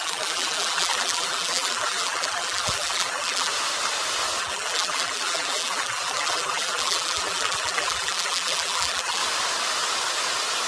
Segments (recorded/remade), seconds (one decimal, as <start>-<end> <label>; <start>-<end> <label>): 0.0-3.5 remade; 3.5-4.4 recorded; 4.4-9.2 remade; 9.2-10.7 recorded